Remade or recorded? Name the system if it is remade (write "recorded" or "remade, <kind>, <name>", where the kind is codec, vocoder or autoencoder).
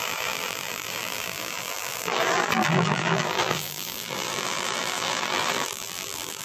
remade, vocoder, BigVGAN v2